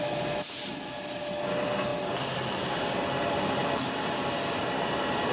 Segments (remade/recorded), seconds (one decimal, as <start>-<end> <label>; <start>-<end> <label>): 0.0-5.3 recorded